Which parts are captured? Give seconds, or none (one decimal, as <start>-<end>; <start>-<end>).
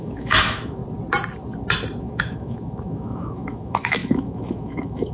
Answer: 0.8-2.0